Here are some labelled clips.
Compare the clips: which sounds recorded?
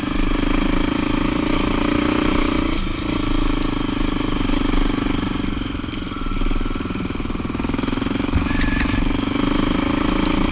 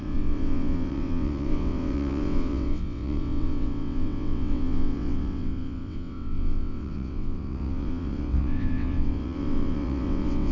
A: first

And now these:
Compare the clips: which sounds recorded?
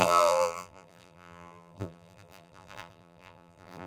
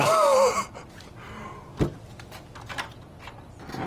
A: second